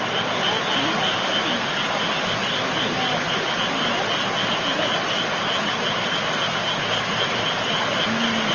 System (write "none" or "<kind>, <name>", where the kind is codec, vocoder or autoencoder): none